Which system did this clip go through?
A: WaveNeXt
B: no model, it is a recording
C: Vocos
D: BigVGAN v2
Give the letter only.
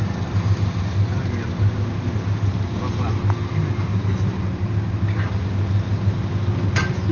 B